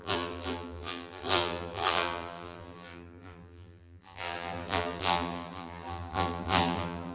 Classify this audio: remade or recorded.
remade